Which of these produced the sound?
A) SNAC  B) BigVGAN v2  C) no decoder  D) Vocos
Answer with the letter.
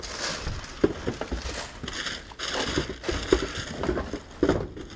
C